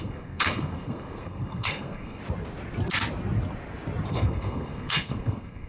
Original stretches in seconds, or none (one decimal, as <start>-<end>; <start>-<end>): 2.2-4.1